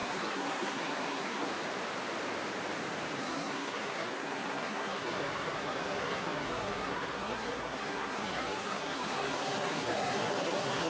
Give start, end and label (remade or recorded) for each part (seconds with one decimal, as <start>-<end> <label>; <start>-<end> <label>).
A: 0.0-1.5 remade; 1.5-3.2 recorded; 3.2-10.9 remade

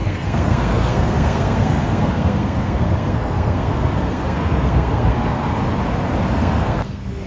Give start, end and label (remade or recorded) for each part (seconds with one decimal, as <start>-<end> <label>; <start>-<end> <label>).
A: 0.0-5.6 remade; 5.6-6.3 recorded; 6.3-7.3 remade

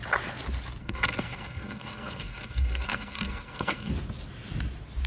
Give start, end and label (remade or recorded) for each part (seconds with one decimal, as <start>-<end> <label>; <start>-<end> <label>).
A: 0.0-0.8 recorded; 0.8-3.9 remade; 3.9-5.1 recorded

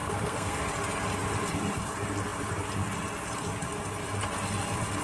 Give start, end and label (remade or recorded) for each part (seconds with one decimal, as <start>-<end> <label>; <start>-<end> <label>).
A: 0.0-0.6 remade; 0.6-5.0 recorded

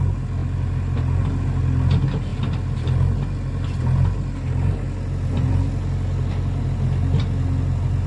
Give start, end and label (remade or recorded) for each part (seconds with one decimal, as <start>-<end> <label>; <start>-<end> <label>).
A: 0.0-8.1 recorded

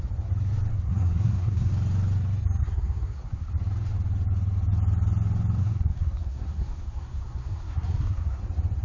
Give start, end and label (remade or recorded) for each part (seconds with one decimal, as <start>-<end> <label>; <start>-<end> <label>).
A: 0.0-0.7 recorded; 0.7-1.7 remade; 1.7-2.6 recorded; 2.6-3.5 remade; 3.5-5.6 recorded; 5.6-8.4 remade; 8.4-8.8 recorded

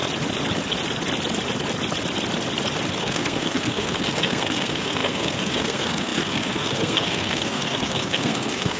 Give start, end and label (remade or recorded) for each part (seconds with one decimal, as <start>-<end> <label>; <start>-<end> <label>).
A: 0.0-3.0 recorded; 3.0-8.8 remade